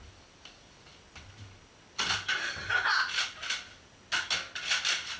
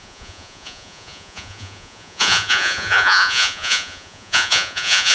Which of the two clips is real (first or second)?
first